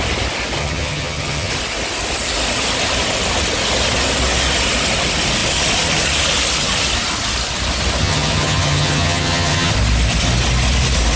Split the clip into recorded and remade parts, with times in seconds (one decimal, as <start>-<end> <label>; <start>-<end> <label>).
0.0-0.6 recorded; 0.6-1.5 remade; 1.5-8.0 recorded; 8.0-9.7 remade; 9.7-11.2 recorded